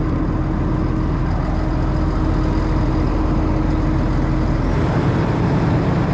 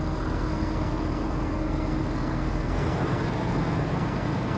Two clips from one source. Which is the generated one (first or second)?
second